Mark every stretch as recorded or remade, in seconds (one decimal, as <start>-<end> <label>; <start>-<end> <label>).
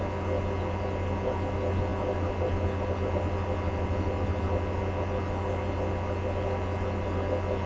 0.0-7.7 recorded